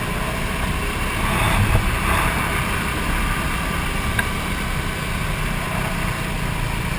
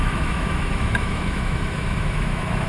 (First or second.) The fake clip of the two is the second